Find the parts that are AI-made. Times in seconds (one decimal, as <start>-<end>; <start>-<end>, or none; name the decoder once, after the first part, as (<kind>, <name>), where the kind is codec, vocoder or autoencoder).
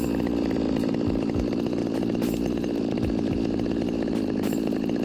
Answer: 0.0-1.8 (vocoder, BigVGAN v2); 2.4-5.0